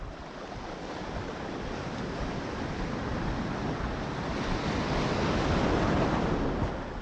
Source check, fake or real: real